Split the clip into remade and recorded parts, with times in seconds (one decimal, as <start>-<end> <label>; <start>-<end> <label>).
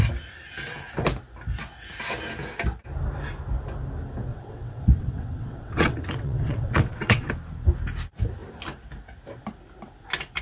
0.0-4.3 recorded; 4.3-7.3 remade; 7.3-10.4 recorded